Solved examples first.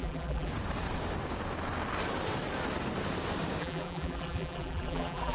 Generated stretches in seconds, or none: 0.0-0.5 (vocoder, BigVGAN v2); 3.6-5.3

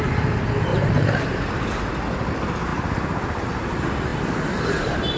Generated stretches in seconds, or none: 0.7-1.9 (vocoder, BigVGAN v2); 2.7-3.6